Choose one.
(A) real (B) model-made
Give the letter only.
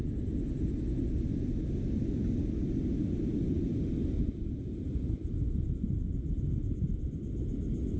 A